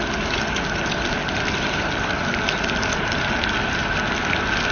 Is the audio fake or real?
real